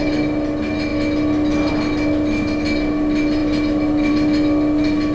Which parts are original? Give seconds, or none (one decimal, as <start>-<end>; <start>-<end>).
0.0-5.1